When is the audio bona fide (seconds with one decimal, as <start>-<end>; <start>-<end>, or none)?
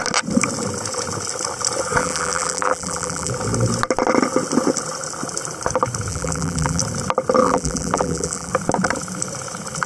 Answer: 0.0-2.0; 3.3-6.1; 6.8-7.4; 8.5-9.9